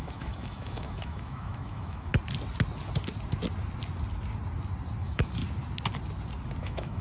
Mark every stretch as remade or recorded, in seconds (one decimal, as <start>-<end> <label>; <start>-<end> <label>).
0.0-2.1 remade; 2.1-5.0 recorded; 5.0-5.4 remade; 5.4-6.6 recorded; 6.6-7.0 remade